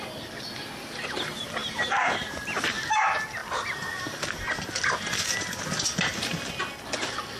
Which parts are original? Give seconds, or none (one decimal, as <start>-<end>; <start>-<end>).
0.0-1.6; 2.8-7.4